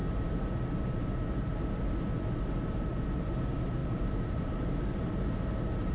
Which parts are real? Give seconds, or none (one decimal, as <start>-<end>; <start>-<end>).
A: 0.0-3.8; 4.7-5.9